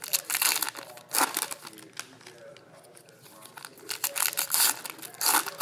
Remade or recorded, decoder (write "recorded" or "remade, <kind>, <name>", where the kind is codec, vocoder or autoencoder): recorded